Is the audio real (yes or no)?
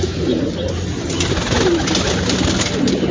yes